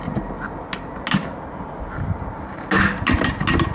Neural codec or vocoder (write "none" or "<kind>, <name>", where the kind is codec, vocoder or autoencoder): none